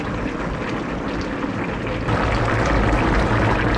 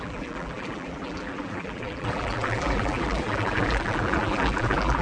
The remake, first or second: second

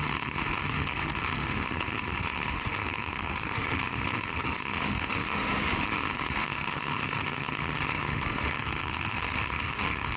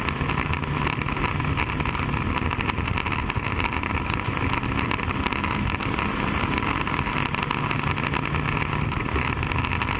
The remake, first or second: first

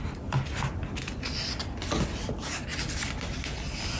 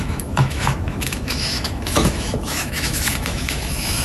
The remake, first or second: second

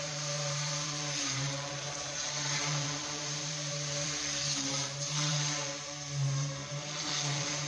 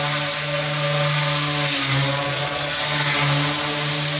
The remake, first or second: first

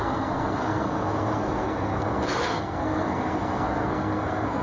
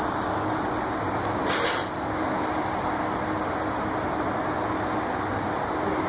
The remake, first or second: first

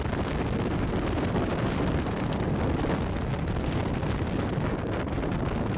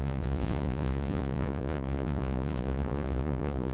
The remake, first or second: second